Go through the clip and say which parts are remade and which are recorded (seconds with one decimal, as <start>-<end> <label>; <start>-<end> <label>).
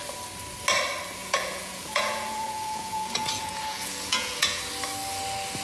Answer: 0.0-1.2 recorded; 1.2-4.6 remade; 4.6-5.6 recorded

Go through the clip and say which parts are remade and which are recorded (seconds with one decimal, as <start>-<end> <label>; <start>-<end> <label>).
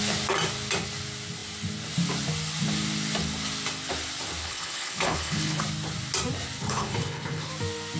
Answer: 0.0-4.4 recorded; 4.4-5.6 remade; 5.6-6.6 recorded; 6.6-7.5 remade; 7.5-8.0 recorded